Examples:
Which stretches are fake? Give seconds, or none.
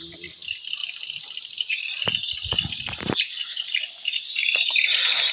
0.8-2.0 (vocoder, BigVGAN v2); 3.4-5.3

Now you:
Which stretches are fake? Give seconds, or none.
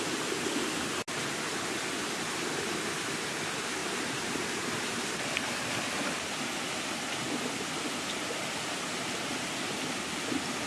3.8-5.7 (vocoder, BigVGAN v2)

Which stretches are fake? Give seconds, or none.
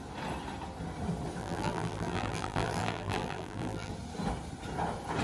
1.4-3.9 (vocoder, BigVGAN v2)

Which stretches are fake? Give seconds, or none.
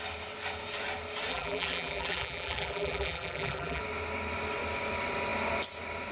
1.3-3.8 (vocoder, BigVGAN v2)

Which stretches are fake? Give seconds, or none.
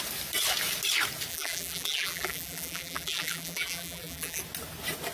1.3-4.4 (vocoder, BigVGAN v2)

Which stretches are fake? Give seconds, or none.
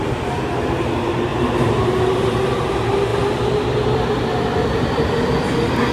1.3-1.9 (vocoder, BigVGAN v2); 3.1-5.4